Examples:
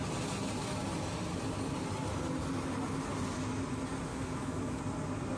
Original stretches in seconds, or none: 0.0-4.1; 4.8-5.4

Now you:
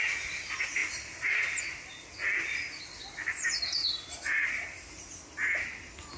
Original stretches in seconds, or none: 0.0-0.8; 1.6-3.8; 5.0-6.2

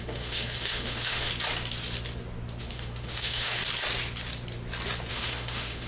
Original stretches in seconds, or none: 1.3-2.6; 3.6-5.1

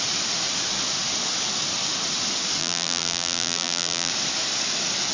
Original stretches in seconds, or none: 0.0-2.6; 4.1-5.1

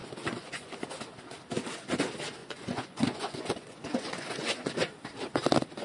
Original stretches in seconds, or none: 0.8-2.4; 4.7-5.8

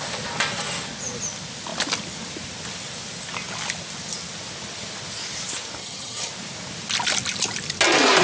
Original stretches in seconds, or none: 0.0-5.8; 6.3-8.2

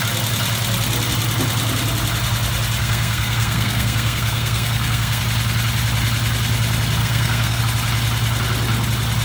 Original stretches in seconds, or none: 0.0-2.8; 5.2-7.0; 7.6-9.2

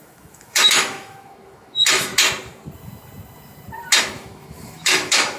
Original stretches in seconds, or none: 2.1-4.0